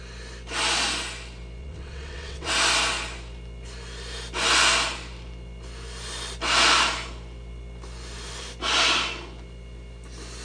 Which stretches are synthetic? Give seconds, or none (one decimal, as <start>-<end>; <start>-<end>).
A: 1.6-2.5